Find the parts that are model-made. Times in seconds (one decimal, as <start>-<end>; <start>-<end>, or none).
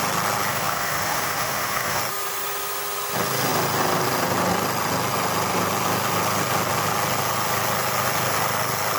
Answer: 0.5-2.0